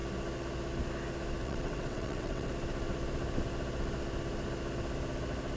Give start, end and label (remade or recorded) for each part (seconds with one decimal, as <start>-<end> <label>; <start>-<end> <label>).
0.0-1.4 recorded; 1.4-2.5 remade; 2.5-5.6 recorded